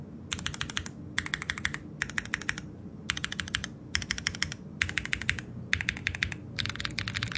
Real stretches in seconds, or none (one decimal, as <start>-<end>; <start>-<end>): 0.0-7.4